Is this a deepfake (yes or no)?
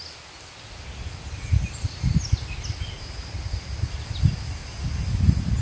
no